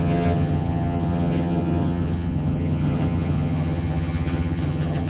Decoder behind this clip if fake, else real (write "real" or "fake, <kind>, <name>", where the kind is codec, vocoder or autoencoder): fake, vocoder, HiFi-GAN